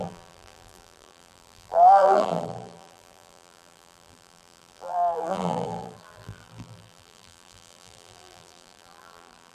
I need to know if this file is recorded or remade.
remade